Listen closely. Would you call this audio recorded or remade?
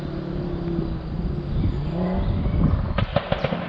recorded